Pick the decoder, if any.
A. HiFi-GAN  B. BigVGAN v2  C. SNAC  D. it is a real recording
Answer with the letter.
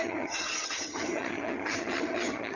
A